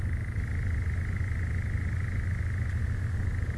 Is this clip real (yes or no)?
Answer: yes